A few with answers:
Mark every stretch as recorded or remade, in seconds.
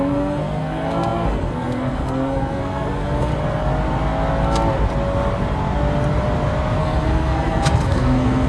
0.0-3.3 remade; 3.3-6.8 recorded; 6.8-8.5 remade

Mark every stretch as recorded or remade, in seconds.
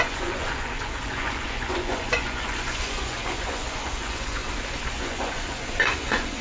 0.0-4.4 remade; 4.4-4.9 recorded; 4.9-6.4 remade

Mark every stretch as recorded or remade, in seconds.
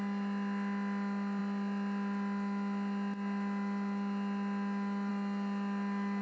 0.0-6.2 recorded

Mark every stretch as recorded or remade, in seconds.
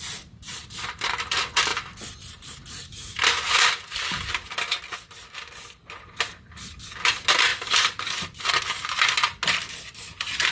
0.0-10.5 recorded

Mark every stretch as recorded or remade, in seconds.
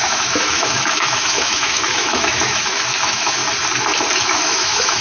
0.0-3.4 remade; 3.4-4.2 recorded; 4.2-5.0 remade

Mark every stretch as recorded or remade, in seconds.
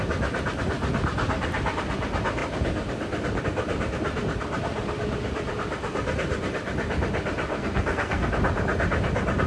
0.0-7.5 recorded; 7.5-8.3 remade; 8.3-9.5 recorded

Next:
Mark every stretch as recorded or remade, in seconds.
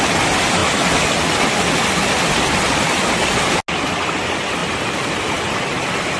0.0-6.2 recorded